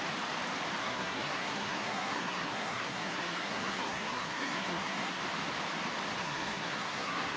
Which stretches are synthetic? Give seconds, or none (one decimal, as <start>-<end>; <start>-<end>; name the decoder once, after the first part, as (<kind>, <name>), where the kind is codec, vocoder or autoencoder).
0.8-5.2 (codec, SNAC); 6.2-7.4